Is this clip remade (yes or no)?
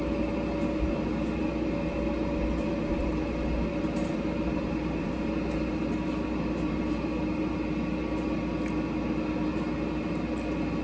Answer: no